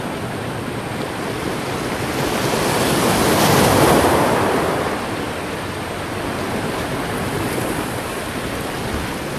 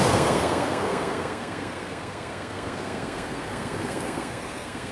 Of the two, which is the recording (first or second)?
first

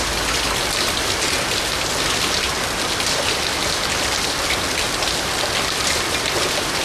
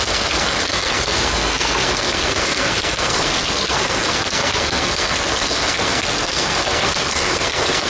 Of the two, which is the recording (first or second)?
first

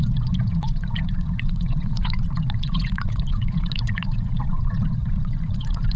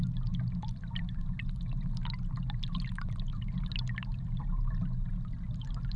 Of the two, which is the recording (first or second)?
second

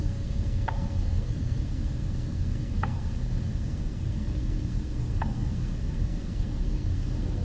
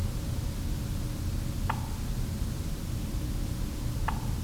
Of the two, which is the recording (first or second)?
second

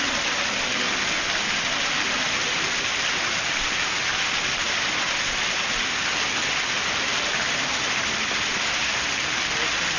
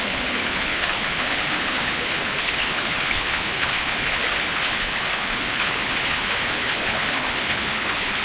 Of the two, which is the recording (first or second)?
first